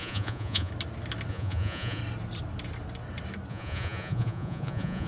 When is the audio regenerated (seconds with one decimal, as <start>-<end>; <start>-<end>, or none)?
0.0-0.7; 1.3-2.0; 3.5-5.1